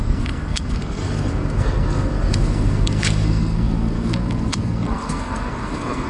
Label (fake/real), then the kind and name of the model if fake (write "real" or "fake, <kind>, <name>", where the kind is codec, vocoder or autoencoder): fake, codec, SNAC